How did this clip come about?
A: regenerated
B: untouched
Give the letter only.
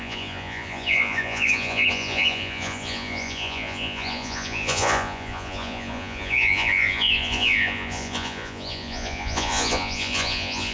A